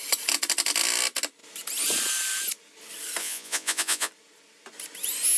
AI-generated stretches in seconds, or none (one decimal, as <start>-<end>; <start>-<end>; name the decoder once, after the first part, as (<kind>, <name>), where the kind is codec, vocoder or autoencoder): 3.2-4.1 (vocoder, Vocos)

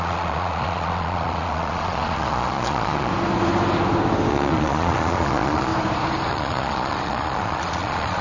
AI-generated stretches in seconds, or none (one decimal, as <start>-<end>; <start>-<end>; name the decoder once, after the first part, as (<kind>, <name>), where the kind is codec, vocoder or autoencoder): 0.0-3.1 (vocoder, Vocos); 4.3-5.7; 6.3-8.2